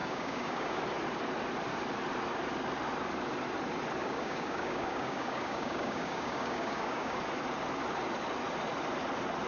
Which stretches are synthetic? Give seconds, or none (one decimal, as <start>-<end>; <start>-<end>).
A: 0.0-0.8; 4.0-7.2